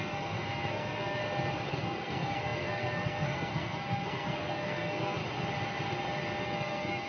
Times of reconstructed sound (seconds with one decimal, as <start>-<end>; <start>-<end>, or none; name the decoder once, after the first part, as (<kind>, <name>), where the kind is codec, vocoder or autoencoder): 0.0-1.2 (codec, SNAC); 1.7-5.2; 6.4-7.1